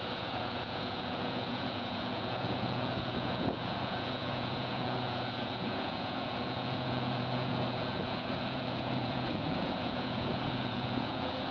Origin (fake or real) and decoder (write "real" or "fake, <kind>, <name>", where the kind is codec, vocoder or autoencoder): fake, vocoder, Vocos